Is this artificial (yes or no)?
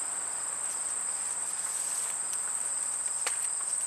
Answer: yes